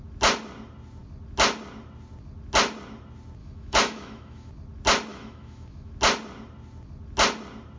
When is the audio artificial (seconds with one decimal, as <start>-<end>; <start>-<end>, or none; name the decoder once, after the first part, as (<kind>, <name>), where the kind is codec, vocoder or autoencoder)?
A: 3.4-4.5 (autoencoder, DAC-VAE); 5.1-5.9